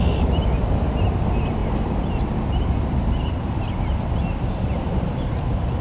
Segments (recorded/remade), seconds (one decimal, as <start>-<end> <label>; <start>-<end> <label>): 0.0-1.6 recorded; 1.6-2.4 remade; 2.4-5.8 recorded